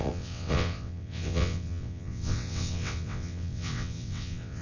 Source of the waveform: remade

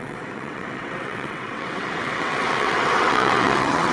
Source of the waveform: remade